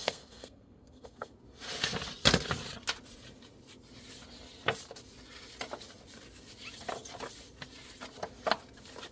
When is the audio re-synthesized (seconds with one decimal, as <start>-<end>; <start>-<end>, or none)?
0.0-1.3

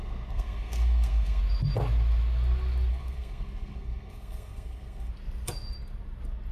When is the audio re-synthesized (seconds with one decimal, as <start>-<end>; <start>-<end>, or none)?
0.0-1.4; 2.9-5.1